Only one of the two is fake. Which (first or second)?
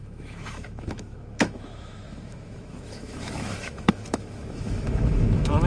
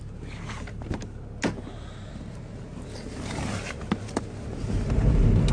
first